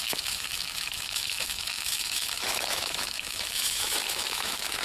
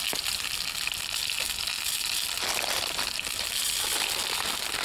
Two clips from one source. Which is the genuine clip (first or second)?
second